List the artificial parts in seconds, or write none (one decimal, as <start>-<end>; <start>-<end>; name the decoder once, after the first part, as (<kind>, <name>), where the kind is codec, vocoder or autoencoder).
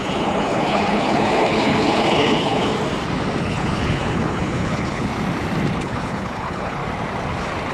0.0-2.7 (codec, HILCodec); 3.4-5.1; 5.8-6.8